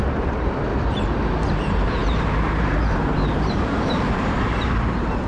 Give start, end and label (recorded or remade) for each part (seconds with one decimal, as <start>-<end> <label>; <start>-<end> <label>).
0.0-0.7 remade; 0.7-1.5 recorded; 1.5-5.3 remade